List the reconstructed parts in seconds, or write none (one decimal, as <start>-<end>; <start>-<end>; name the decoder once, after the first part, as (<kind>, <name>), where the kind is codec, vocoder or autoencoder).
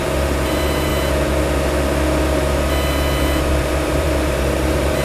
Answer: 0.0-0.9 (vocoder, BigVGAN v2); 3.5-5.0